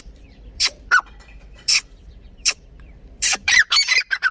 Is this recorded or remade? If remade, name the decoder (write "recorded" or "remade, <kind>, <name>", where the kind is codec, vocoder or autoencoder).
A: remade, vocoder, BigVGAN v2